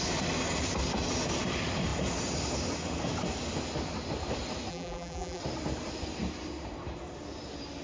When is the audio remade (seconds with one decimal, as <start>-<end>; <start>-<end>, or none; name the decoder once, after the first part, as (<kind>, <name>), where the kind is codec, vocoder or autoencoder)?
4.7-5.4 (vocoder, BigVGAN v2)

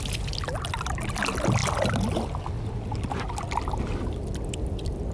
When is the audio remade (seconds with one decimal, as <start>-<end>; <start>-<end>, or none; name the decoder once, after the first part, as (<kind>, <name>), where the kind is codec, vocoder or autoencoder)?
none

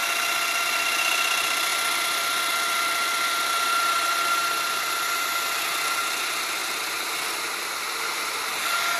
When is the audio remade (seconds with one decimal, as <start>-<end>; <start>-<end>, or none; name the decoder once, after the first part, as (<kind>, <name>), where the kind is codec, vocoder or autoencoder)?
none

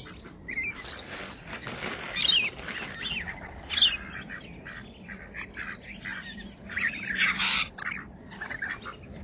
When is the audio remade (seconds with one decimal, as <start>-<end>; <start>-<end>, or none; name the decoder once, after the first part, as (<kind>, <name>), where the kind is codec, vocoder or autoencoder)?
6.1-7.8 (vocoder, BigVGAN v2)

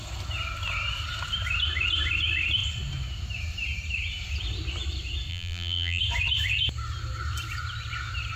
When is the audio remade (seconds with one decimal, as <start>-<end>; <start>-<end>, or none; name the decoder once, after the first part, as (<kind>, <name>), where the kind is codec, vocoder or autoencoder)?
5.3-6.0 (vocoder, BigVGAN v2)

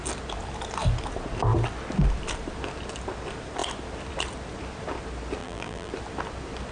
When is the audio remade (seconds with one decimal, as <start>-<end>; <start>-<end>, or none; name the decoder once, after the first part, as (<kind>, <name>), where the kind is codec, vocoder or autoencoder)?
5.4-5.9 (vocoder, BigVGAN v2)

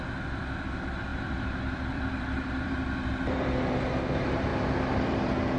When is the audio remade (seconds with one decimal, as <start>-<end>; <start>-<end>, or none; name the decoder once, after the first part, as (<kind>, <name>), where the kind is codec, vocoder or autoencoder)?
1.1-3.9 (vocoder, BigVGAN v2); 4.5-5.6